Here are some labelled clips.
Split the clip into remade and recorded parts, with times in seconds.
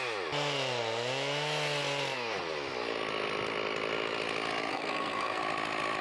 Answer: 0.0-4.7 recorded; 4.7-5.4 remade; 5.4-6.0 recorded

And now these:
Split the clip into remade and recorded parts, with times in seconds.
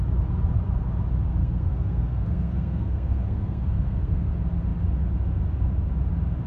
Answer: 0.0-1.4 recorded; 1.4-4.3 remade; 4.3-6.5 recorded